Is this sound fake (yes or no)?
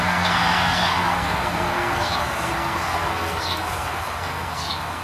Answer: yes